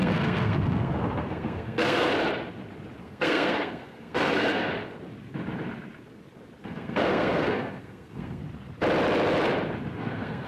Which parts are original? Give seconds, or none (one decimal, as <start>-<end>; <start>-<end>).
2.1-3.0; 4.7-6.6; 8.4-9.9